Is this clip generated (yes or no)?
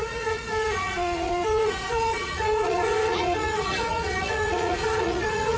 yes